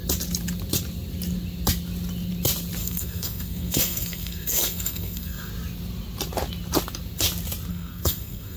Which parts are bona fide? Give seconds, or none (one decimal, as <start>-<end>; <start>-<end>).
0.0-2.8; 5.5-7.7